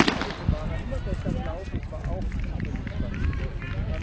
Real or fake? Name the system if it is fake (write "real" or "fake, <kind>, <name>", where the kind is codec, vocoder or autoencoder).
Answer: real